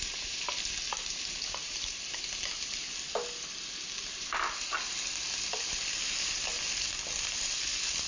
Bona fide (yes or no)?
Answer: yes